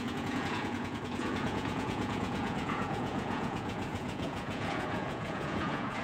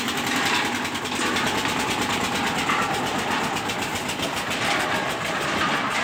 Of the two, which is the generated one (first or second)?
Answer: first